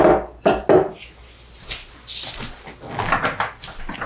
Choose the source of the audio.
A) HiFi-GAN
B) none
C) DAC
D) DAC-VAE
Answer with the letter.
B